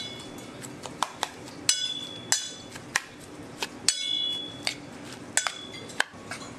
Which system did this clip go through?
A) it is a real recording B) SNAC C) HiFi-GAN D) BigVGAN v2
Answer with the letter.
A